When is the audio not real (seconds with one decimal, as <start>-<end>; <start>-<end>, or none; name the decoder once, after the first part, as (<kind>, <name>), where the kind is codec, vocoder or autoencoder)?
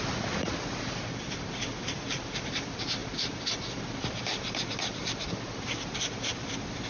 0.0-3.0 (vocoder, BigVGAN v2); 3.6-6.9